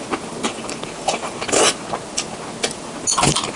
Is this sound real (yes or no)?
yes